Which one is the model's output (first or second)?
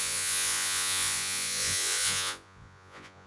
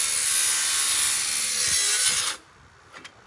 first